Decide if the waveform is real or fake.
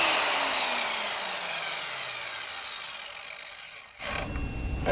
real